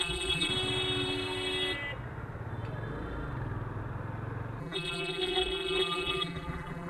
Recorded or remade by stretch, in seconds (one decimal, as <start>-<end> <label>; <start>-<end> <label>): 0.0-0.5 remade; 0.5-4.6 recorded; 4.6-6.9 remade